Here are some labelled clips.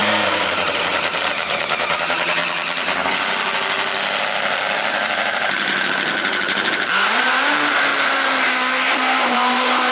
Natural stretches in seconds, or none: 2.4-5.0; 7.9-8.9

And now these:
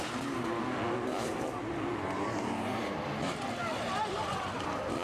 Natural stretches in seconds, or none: 1.3-3.9

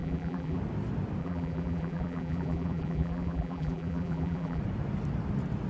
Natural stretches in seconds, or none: 0.6-1.2; 4.6-5.7

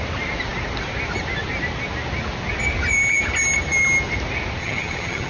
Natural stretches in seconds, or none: 0.0-4.6

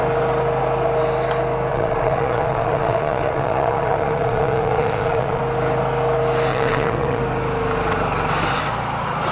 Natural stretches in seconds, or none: 0.0-1.7; 5.4-6.5; 7.2-9.3

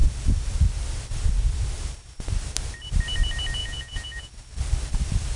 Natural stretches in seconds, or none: 0.0-3.6; 4.3-5.4

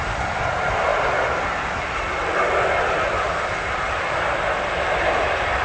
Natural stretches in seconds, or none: 0.0-5.6